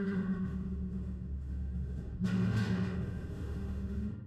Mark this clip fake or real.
fake